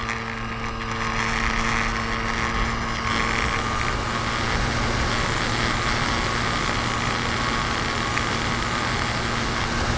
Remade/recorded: recorded